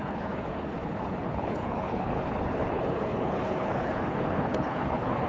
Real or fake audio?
fake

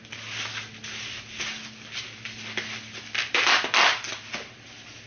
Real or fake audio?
real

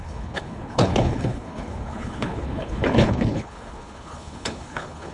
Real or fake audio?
fake